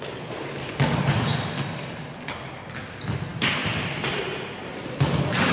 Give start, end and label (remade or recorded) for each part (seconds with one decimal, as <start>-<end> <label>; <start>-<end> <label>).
0.0-3.3 recorded; 3.3-4.8 remade; 4.8-5.5 recorded